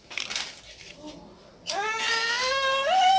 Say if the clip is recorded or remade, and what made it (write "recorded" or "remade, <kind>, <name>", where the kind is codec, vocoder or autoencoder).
recorded